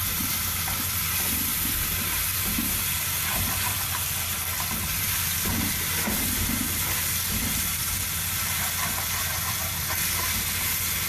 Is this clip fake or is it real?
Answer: real